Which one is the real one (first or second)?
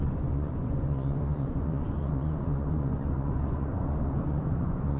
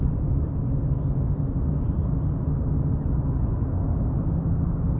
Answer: second